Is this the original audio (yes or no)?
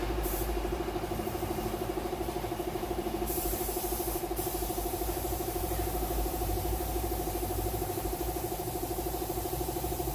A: no